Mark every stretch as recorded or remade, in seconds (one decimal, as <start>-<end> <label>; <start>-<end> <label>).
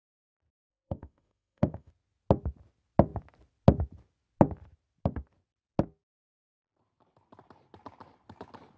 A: 0.0-0.7 recorded; 0.7-1.9 remade; 1.9-8.8 recorded